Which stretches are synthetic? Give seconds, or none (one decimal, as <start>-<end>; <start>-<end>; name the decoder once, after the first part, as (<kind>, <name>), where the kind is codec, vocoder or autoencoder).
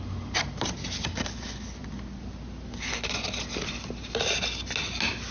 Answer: none